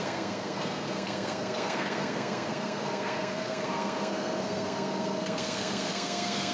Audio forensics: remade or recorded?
remade